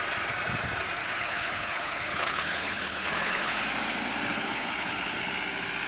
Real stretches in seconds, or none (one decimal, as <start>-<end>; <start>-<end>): 0.0-1.0; 3.6-4.3; 5.3-5.9